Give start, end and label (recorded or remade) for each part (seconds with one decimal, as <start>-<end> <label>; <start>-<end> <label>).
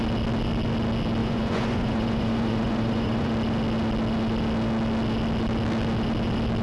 0.0-1.2 recorded; 1.2-3.3 remade; 3.3-6.6 recorded